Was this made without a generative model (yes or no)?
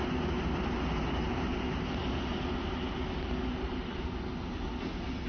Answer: yes